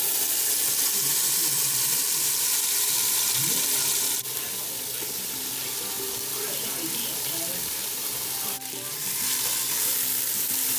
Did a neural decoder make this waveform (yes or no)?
yes